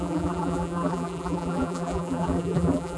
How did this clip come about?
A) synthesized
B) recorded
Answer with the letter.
A